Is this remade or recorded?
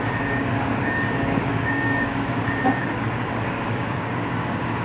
remade